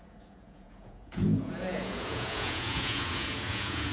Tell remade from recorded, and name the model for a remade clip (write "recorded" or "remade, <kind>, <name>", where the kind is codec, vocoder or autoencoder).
remade, vocoder, Vocos